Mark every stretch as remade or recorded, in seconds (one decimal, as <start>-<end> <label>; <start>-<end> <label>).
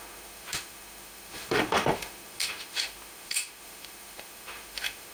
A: 0.0-5.1 remade